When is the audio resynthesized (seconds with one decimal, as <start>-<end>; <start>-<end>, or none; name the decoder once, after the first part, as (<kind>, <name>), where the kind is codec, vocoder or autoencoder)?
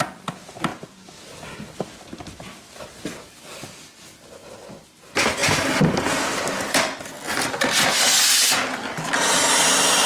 none